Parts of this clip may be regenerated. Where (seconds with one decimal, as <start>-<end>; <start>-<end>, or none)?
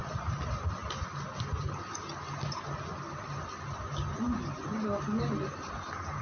none